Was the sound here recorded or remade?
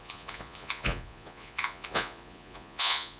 remade